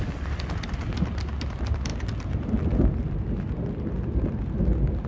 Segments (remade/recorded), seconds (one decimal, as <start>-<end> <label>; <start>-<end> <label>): 0.0-5.1 recorded